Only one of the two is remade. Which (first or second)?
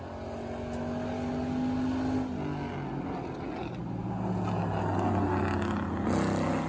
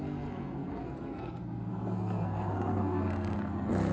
second